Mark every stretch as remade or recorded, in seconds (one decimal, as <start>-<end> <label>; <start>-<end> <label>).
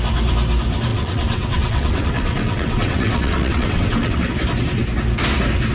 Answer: 0.0-0.9 recorded; 0.9-4.3 remade; 4.3-5.7 recorded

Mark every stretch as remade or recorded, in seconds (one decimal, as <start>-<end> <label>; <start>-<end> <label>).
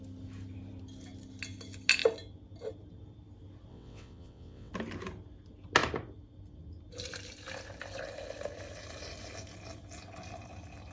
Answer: 0.0-3.7 recorded; 3.7-4.7 remade; 4.7-10.9 recorded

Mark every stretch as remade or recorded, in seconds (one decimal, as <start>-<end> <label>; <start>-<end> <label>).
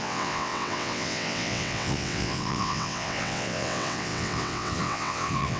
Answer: 0.0-5.6 remade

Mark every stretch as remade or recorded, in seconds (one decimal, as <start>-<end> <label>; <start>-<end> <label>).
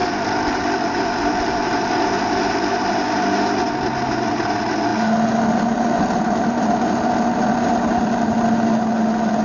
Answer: 0.0-9.4 recorded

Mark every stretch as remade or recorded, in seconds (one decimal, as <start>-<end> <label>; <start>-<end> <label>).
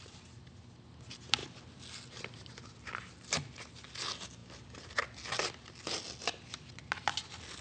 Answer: 0.0-7.6 recorded